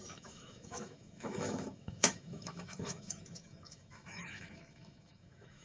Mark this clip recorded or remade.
remade